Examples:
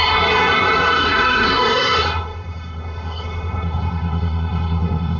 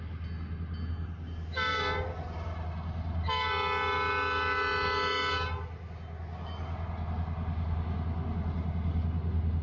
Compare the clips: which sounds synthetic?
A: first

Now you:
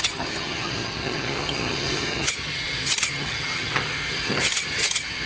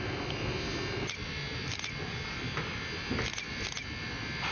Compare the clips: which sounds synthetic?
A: first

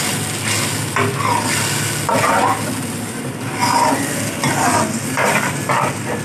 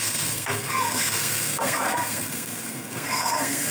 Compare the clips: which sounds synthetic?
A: second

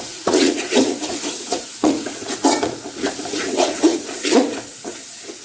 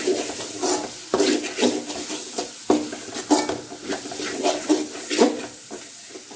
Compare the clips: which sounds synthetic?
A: first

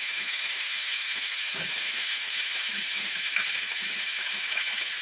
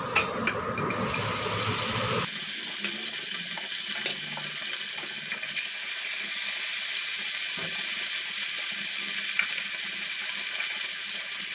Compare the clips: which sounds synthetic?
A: first